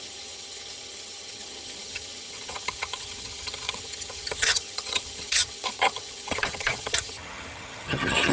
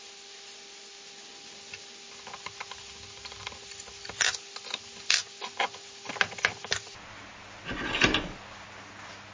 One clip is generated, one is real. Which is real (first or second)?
second